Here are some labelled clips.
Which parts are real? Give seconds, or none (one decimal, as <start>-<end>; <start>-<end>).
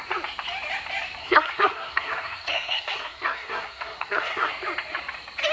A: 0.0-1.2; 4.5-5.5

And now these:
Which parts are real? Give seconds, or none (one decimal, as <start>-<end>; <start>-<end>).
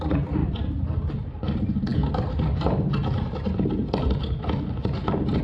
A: 0.0-5.4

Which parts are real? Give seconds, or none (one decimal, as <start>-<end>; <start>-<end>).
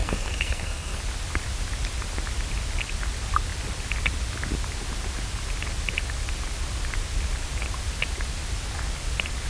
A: 1.0-9.5